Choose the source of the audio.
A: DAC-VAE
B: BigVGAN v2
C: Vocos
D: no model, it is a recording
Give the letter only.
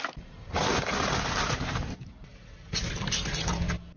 D